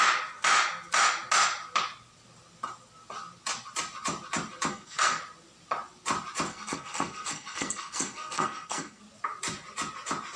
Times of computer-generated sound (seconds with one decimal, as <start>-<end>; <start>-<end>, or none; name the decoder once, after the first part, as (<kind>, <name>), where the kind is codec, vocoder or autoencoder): 4.7-5.2 (codec, SNAC); 6.5-9.0